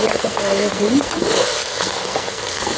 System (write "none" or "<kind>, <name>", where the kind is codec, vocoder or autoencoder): codec, SNAC